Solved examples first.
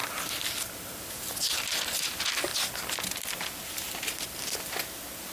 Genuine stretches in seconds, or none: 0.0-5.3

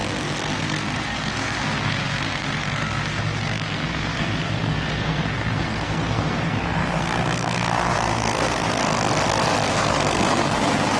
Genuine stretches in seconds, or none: 0.0-0.6; 8.8-9.7

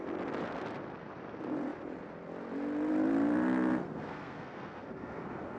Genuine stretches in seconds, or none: 0.0-3.8

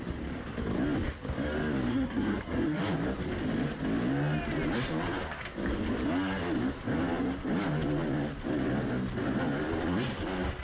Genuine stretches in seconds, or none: 0.0-1.9; 2.8-10.6

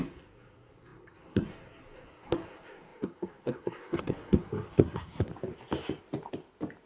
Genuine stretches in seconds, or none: 5.3-6.9

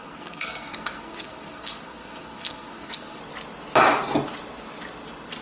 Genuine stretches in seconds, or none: 3.2-5.4

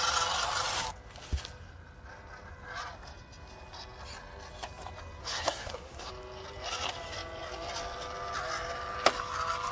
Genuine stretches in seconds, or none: 0.0-5.2; 6.1-9.7